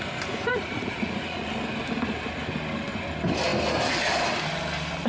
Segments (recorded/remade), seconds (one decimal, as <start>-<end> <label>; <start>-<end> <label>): 0.0-0.5 recorded; 0.5-1.5 remade; 1.5-5.1 recorded